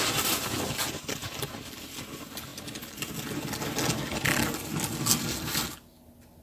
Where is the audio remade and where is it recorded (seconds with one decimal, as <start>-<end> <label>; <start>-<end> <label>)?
0.0-6.4 recorded